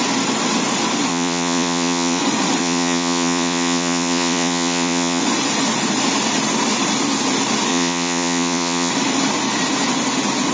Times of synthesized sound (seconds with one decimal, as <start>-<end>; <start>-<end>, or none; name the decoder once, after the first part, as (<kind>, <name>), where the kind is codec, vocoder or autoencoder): 1.1-2.2 (vocoder, Vocos); 2.6-5.2; 7.7-8.9